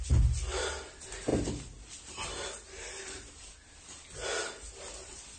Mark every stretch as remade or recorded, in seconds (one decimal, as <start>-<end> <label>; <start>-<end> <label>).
0.0-5.4 recorded